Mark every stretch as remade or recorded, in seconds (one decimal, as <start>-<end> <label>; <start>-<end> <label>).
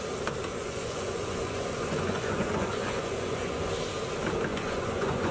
0.0-0.5 recorded; 0.5-3.7 remade; 3.7-4.5 recorded; 4.5-5.3 remade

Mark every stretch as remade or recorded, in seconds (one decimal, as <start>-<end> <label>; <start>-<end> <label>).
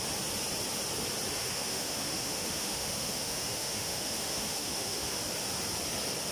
0.0-1.4 recorded; 1.4-5.2 remade; 5.2-6.3 recorded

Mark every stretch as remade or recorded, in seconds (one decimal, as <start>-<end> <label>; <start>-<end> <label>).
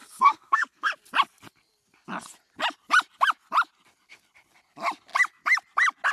0.0-0.9 remade; 0.9-6.1 recorded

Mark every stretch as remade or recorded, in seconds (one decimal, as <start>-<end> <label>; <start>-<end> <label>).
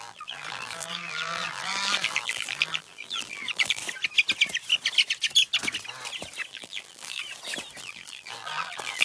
0.0-3.8 remade; 3.8-6.5 recorded; 6.5-7.2 remade; 7.2-7.8 recorded; 7.8-9.0 remade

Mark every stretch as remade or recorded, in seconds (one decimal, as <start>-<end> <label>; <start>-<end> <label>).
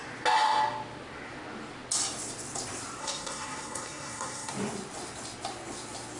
0.0-3.0 recorded; 3.0-4.5 remade; 4.5-6.2 recorded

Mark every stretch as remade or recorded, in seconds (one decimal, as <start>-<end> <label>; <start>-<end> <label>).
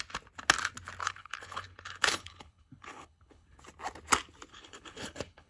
0.0-1.0 recorded; 1.0-3.6 remade; 3.6-4.5 recorded; 4.5-5.5 remade